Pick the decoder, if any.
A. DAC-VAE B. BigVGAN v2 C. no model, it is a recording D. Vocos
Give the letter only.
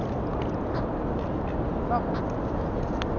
C